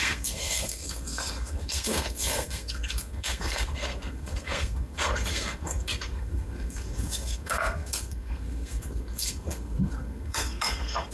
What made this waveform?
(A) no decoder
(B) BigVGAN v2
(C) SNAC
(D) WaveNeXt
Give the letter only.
C